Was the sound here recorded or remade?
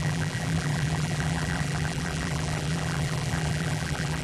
remade